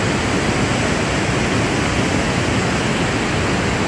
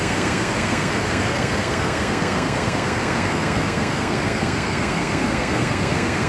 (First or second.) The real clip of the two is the first